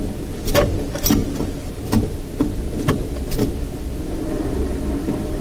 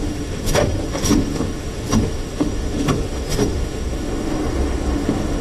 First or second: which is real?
first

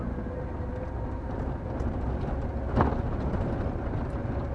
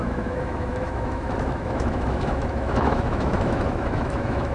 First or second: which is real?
first